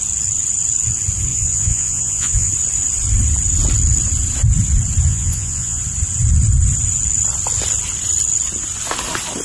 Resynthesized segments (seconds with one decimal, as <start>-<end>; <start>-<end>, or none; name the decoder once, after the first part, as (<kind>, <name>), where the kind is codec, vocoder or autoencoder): 1.3-2.5 (vocoder, Vocos); 5.1-5.8